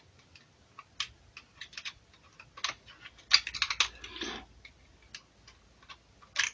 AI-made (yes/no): no